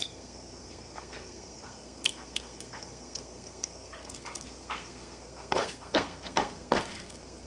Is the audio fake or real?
fake